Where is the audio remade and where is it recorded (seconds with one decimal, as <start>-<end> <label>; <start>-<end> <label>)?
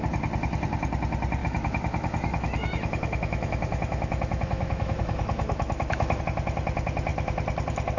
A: 0.0-1.4 recorded; 1.4-6.2 remade; 6.2-8.0 recorded